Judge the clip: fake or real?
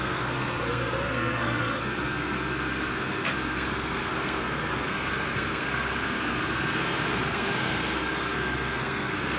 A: fake